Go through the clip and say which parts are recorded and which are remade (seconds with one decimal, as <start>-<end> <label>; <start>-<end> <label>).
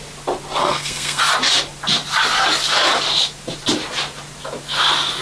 0.0-0.6 recorded; 0.6-1.2 remade; 1.2-5.2 recorded